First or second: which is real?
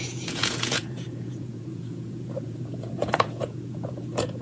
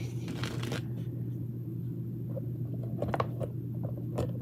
second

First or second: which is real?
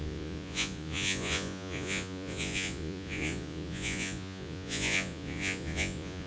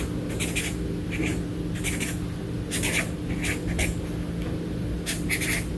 second